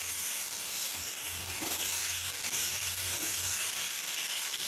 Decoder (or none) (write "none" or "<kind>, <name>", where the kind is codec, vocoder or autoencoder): codec, DAC